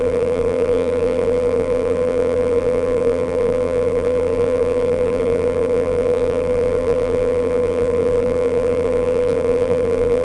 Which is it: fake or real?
fake